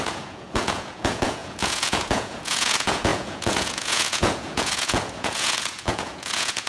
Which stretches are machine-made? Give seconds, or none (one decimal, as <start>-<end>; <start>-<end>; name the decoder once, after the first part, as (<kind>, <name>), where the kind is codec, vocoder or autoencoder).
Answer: 0.0-6.7 (vocoder, Vocos)